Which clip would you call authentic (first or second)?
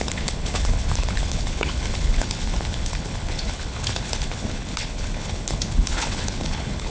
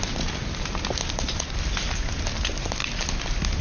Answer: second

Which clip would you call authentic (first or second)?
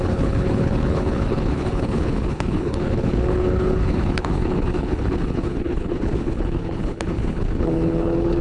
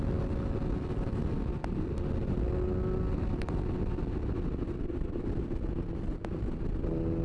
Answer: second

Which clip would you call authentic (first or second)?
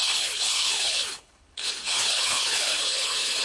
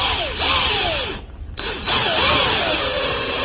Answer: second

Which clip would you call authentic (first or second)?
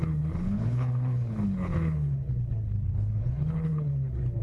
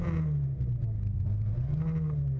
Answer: second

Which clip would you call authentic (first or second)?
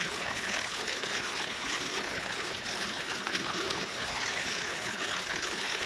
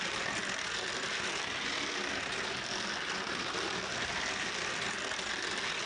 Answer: second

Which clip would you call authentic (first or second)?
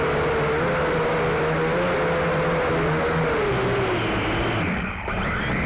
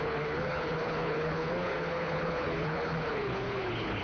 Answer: first